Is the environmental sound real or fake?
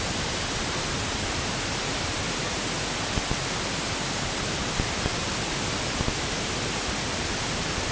real